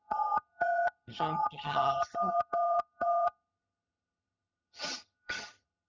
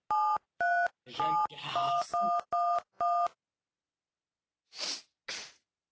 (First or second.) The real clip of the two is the second